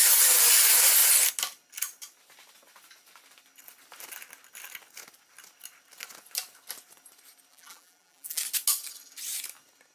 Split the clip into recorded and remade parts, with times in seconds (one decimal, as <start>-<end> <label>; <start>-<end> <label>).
0.0-7.5 recorded; 7.5-8.4 remade; 8.4-9.9 recorded